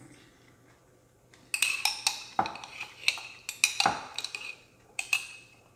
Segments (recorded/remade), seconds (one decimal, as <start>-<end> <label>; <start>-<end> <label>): 0.0-4.1 recorded; 4.1-5.8 remade